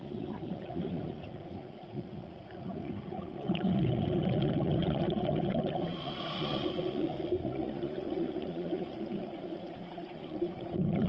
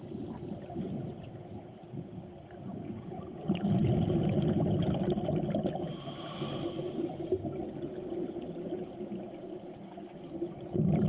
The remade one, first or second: first